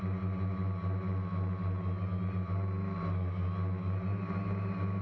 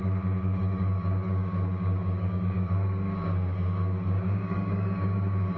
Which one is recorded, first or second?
first